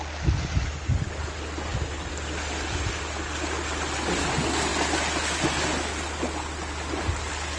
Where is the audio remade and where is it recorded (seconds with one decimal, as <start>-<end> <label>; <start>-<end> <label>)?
0.0-7.6 recorded